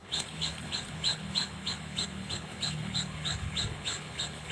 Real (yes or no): no